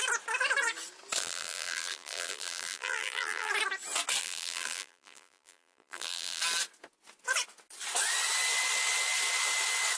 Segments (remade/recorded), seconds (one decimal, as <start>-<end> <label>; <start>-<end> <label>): 0.0-1.2 recorded; 1.2-3.5 remade; 3.5-4.2 recorded; 4.2-6.4 remade; 6.4-10.0 recorded